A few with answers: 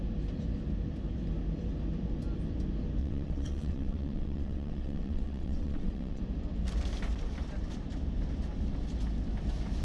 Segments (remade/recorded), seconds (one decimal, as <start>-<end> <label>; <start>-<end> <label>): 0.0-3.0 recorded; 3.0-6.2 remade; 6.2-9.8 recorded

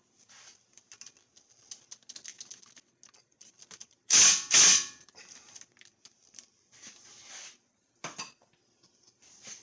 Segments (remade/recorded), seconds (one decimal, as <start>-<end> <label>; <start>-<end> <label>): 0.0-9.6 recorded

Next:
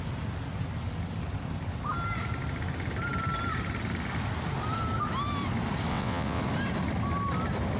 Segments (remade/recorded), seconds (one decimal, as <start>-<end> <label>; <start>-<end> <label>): 0.0-5.9 recorded; 5.9-6.4 remade; 6.4-7.8 recorded

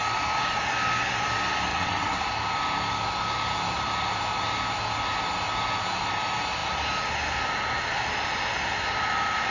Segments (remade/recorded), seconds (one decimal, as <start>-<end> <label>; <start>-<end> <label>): 0.0-1.7 recorded; 1.7-2.3 remade; 2.3-9.5 recorded

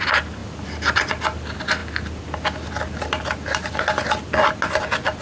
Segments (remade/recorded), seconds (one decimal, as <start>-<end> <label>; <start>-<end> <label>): 0.0-5.2 recorded

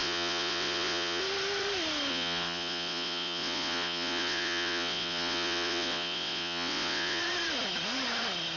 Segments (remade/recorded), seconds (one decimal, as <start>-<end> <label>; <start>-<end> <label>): 0.0-1.2 remade; 1.2-2.1 recorded; 2.1-7.2 remade; 7.2-8.6 recorded

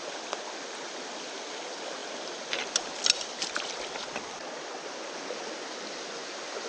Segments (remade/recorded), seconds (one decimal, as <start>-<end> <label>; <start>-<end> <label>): 0.0-6.7 recorded

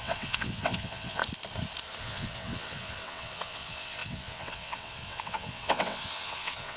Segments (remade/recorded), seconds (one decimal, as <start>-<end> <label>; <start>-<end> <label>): 0.0-1.2 remade; 1.2-2.0 recorded; 2.0-6.8 remade